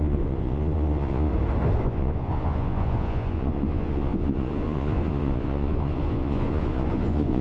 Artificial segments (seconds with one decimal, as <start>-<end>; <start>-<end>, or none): 0.0-1.3; 1.8-7.4